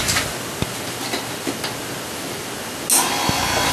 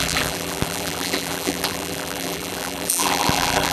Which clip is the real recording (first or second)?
first